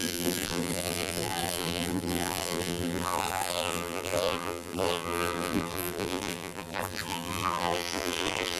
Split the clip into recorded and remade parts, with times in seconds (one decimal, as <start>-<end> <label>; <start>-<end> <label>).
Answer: 0.0-8.6 remade